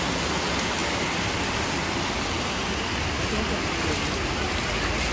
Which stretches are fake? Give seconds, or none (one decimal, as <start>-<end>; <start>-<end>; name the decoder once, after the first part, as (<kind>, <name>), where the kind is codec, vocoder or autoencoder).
none

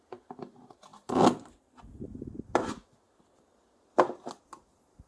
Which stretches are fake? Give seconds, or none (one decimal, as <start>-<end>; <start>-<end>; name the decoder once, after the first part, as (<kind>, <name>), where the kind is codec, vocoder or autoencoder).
none

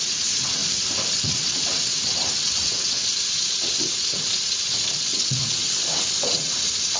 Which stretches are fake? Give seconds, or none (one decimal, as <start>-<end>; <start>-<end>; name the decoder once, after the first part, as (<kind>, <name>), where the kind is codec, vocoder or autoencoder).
0.0-0.6 (vocoder, WaveNeXt); 1.1-7.0

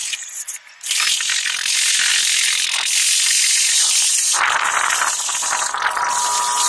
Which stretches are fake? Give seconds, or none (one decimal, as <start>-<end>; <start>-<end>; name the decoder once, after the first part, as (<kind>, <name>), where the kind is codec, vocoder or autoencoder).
none

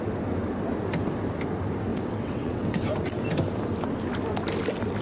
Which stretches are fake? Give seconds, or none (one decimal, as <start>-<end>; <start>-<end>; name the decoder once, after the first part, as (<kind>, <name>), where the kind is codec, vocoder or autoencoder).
1.9-2.8 (vocoder, WaveNeXt)